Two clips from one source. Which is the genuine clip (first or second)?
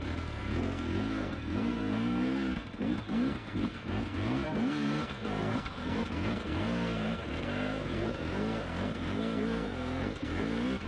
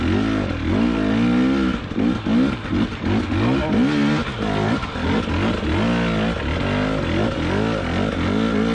second